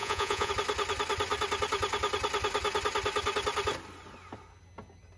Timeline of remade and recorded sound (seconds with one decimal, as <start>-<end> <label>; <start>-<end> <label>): 0.0-0.5 remade; 0.5-5.2 recorded